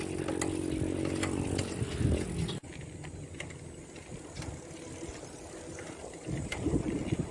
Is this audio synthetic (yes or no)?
no